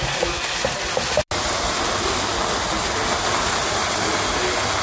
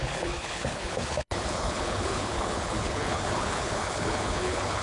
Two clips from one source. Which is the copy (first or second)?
second